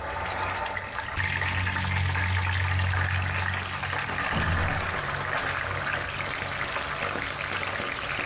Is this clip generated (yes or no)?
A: no